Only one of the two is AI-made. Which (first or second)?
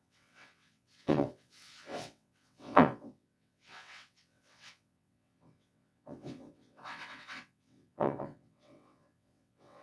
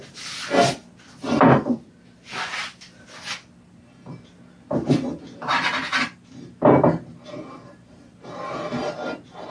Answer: first